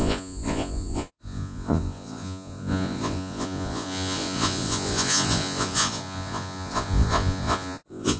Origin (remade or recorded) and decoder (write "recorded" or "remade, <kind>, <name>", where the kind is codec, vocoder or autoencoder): remade, vocoder, Vocos